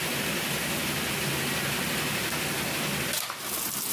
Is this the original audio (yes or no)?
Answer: yes